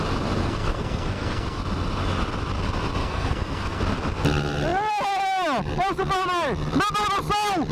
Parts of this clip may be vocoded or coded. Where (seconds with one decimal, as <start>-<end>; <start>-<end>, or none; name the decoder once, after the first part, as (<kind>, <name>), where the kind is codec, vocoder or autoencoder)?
0.4-1.6 (codec, SNAC); 3.0-3.8

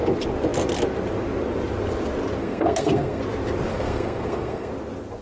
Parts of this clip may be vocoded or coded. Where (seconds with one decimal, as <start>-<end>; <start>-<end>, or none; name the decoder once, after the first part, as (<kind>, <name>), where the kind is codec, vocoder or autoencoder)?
2.4-3.2 (codec, SNAC); 3.7-4.7

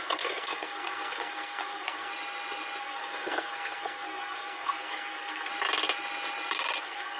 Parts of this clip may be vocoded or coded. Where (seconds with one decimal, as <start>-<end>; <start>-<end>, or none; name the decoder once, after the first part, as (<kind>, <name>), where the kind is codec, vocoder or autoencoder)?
0.0-2.1 (codec, SNAC); 2.8-5.5; 6.8-7.2

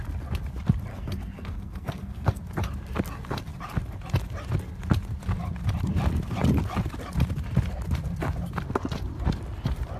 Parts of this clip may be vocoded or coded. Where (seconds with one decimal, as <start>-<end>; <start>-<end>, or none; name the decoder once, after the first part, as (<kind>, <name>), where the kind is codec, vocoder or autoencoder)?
0.9-2.4 (codec, SNAC)

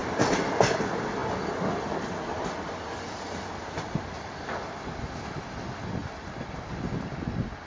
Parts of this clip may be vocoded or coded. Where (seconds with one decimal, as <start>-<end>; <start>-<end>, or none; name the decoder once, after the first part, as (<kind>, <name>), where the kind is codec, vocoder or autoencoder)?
none

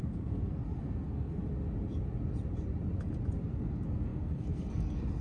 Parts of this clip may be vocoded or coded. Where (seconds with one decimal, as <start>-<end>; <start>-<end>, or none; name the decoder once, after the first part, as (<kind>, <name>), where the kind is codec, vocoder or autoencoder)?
0.0-1.4 (codec, SNAC); 3.4-5.2

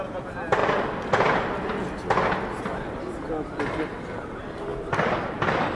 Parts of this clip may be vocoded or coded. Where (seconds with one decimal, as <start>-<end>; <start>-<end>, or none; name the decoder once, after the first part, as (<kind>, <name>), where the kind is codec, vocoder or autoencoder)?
none